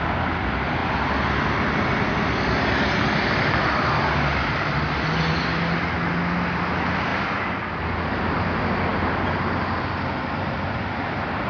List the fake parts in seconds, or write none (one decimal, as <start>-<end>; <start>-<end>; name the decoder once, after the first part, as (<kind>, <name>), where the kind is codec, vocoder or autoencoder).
none